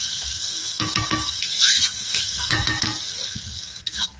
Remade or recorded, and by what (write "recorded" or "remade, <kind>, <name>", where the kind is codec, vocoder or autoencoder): remade, codec, SNAC